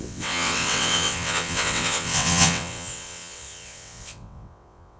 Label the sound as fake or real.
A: fake